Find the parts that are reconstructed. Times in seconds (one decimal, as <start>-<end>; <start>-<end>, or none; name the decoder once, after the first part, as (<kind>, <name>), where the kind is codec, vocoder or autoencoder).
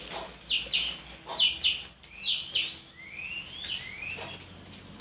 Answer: none